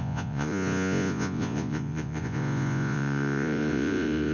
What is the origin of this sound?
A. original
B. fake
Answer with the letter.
B